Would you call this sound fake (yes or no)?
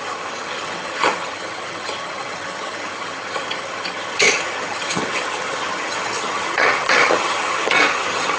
yes